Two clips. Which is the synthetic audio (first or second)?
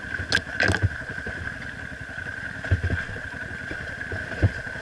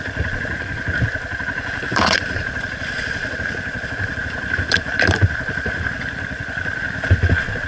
second